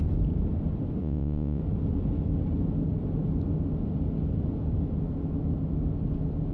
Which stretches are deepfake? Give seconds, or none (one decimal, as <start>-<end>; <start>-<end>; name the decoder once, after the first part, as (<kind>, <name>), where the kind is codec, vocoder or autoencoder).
1.0-1.6 (vocoder, Vocos)